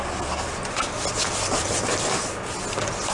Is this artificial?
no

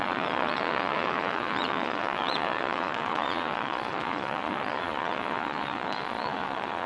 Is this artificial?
yes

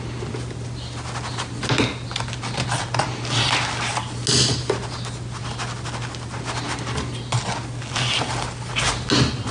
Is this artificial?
no